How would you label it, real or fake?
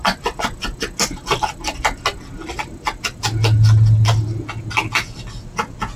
real